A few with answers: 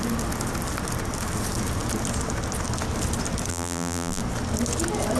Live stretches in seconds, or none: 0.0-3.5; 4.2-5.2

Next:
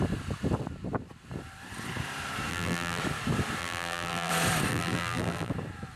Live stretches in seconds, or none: 0.0-2.5; 3.0-3.6; 4.3-4.7; 5.5-6.0

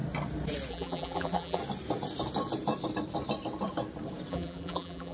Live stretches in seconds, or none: 0.0-0.7; 1.6-4.3

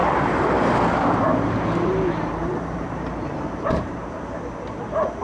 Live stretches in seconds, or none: 0.6-1.3; 4.4-5.2